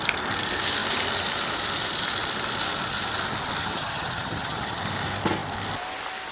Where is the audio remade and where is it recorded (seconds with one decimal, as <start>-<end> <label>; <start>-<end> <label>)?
0.0-3.6 recorded; 3.6-4.8 remade; 4.8-6.3 recorded